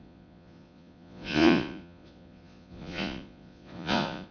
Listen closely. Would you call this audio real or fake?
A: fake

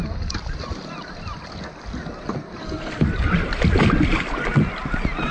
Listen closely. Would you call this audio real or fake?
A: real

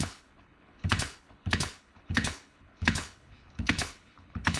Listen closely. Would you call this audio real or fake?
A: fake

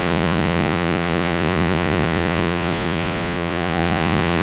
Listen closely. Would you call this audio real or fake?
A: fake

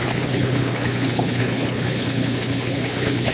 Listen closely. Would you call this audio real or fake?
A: fake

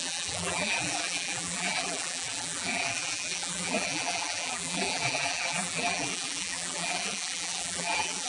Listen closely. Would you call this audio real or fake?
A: fake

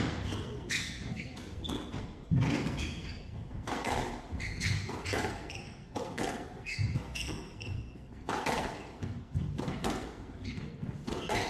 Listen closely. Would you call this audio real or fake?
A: fake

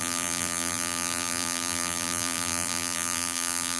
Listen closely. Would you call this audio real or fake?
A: fake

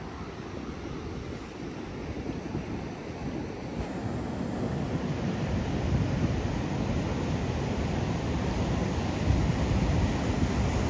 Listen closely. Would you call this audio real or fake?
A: real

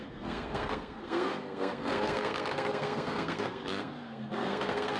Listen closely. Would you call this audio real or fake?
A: fake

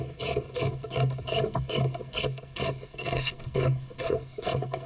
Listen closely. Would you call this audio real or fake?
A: fake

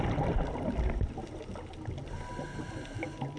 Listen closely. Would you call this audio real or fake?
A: real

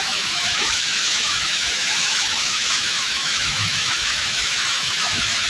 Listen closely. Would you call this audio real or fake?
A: fake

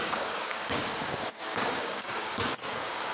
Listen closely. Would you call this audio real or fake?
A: fake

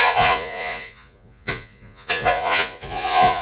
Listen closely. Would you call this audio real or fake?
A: fake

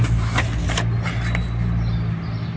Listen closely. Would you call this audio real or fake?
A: real